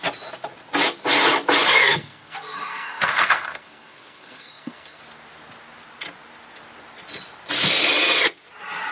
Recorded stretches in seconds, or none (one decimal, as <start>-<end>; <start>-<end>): 0.0-1.8; 5.0-8.9